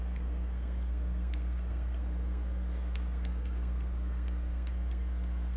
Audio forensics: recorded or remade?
remade